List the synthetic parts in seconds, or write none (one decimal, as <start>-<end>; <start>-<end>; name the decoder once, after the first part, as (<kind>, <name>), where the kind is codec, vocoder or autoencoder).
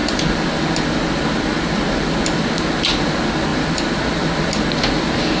none